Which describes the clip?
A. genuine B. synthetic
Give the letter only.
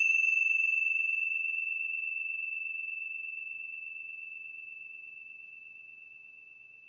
A